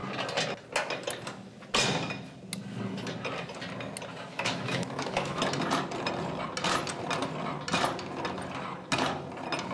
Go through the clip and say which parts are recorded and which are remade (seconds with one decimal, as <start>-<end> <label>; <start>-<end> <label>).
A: 0.0-4.3 recorded; 4.3-5.4 remade; 5.4-9.7 recorded